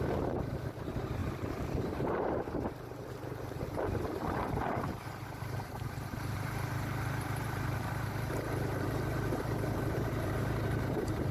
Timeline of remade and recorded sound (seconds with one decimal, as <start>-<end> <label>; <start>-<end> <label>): 0.0-1.2 remade; 1.2-1.8 recorded; 1.8-11.3 remade